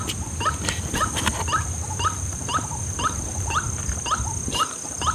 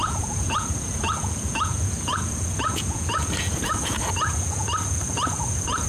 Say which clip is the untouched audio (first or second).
first